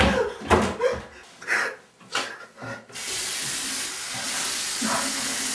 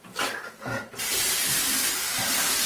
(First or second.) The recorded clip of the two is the first